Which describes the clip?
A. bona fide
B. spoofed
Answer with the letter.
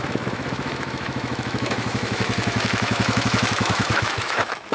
B